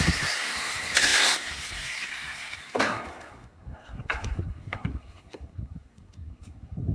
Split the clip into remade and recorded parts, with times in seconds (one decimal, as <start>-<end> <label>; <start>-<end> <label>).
0.0-6.9 remade